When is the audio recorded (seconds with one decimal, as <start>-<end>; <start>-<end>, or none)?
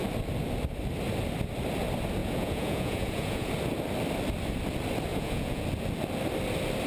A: 0.0-2.2; 3.5-5.1; 5.6-6.9